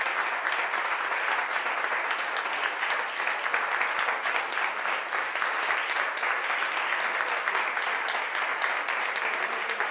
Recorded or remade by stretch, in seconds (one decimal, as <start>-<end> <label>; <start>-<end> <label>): 0.0-9.9 recorded